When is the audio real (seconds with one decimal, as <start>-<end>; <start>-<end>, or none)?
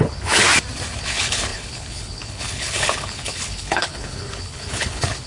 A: 0.5-1.0